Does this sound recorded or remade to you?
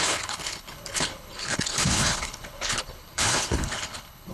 remade